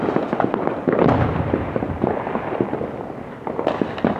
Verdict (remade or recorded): recorded